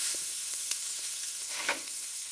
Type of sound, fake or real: fake